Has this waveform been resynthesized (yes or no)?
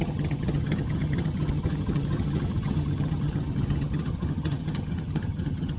yes